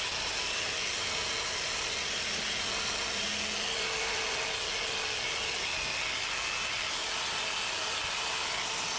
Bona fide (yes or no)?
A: yes